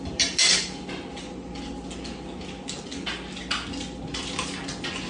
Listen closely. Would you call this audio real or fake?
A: real